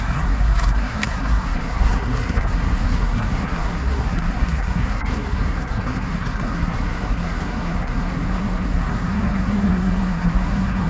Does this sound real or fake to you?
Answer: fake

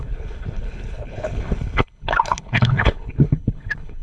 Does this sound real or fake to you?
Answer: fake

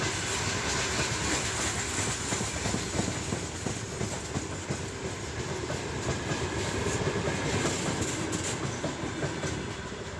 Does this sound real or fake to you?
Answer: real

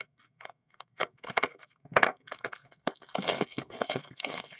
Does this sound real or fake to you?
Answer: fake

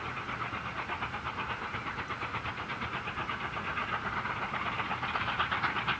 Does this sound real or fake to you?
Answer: real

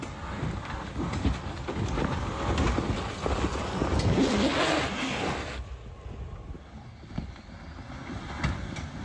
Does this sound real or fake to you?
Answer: real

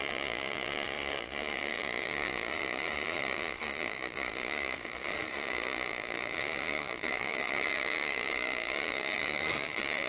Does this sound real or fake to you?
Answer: fake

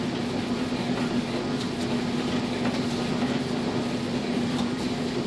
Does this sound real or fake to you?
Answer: real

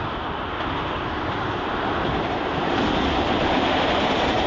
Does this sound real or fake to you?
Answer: real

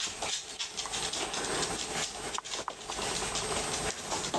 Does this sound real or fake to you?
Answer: real